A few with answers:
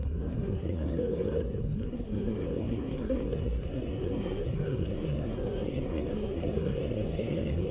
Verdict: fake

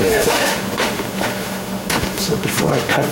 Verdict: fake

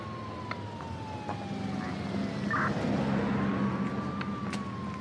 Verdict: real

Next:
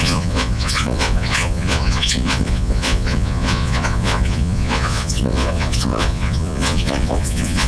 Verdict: fake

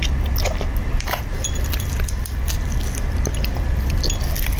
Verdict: real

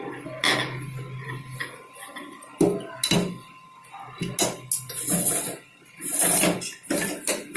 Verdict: real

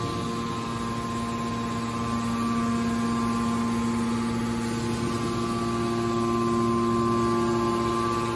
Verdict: real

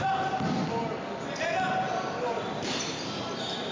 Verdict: real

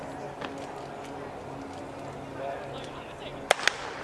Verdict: real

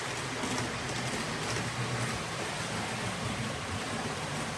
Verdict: real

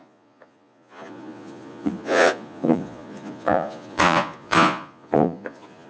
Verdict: fake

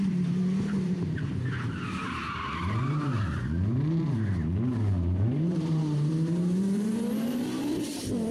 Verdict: fake